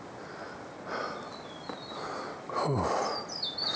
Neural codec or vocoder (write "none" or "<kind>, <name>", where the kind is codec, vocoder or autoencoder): none